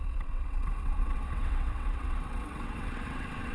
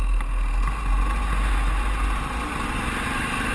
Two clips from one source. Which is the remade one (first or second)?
first